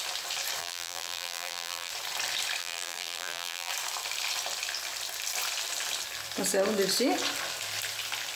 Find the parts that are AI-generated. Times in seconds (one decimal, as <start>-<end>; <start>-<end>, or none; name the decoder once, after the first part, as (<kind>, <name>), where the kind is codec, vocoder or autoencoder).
0.6-1.9 (vocoder, BigVGAN v2); 2.6-3.7